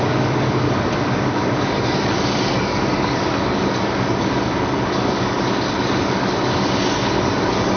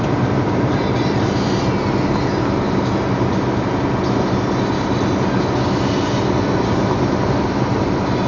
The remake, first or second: first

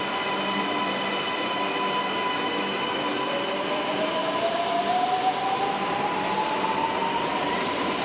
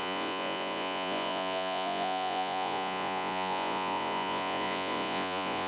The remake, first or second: second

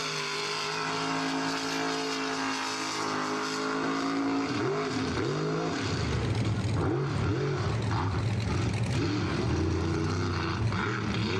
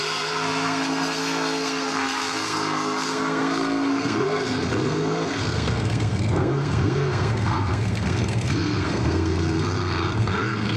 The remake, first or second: second